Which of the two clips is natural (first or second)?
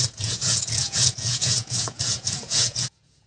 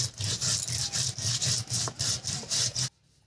second